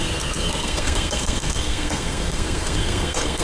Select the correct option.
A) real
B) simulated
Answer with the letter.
B